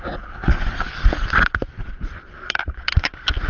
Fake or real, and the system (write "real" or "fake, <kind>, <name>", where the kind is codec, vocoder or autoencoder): real